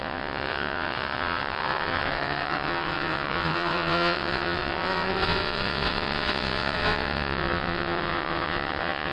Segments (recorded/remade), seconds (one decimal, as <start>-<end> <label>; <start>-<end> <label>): 0.0-9.1 remade